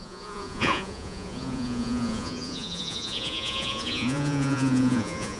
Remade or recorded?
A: remade